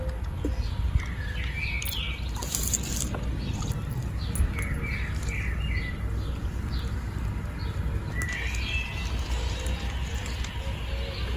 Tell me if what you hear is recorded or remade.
recorded